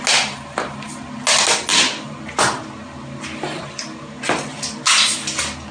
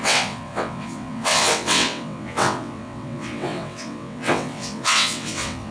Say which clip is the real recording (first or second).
first